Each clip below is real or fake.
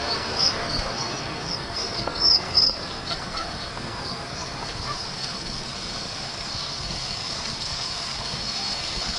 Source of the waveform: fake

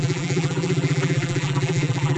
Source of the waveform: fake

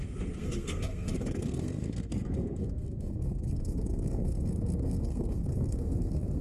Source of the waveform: fake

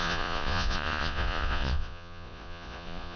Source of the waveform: fake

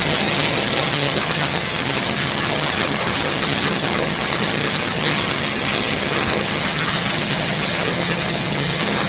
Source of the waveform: fake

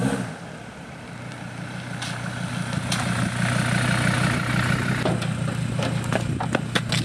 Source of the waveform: real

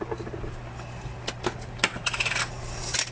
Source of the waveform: real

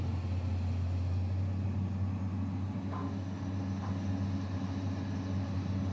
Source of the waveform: real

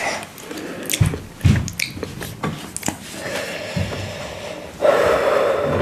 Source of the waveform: real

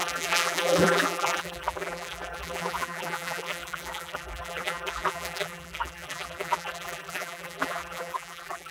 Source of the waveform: fake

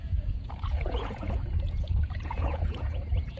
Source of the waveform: fake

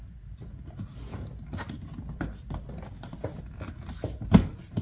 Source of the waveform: real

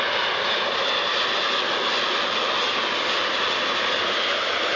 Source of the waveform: real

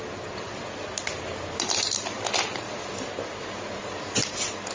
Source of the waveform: real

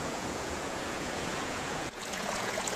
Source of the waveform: fake